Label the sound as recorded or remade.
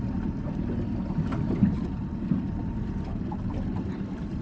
remade